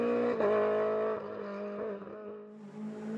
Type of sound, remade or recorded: recorded